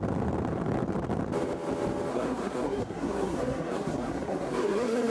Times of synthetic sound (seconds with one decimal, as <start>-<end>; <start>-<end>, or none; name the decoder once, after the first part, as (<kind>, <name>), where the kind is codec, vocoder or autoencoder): 2.1-5.1 (codec, SNAC)